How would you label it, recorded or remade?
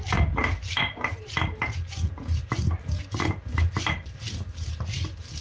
recorded